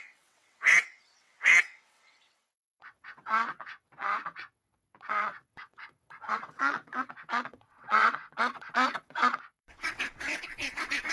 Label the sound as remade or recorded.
remade